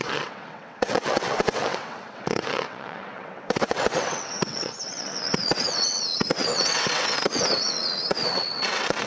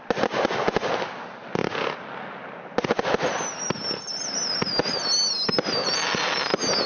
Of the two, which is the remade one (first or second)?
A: first